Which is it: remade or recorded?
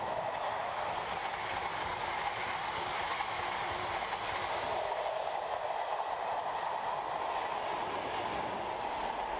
recorded